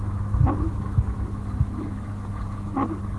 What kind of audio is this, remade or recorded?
remade